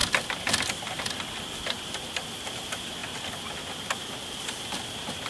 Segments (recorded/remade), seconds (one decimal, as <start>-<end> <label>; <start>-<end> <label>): 0.0-5.3 recorded